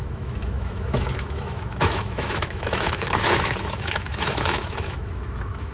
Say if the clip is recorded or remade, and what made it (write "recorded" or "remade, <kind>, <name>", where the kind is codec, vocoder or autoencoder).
remade, autoencoder, DAC-VAE